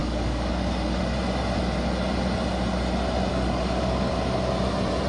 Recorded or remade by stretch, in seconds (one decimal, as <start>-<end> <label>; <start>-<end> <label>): 0.0-1.0 remade; 1.0-3.3 recorded; 3.3-4.1 remade; 4.1-5.1 recorded